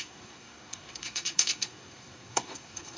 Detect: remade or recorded remade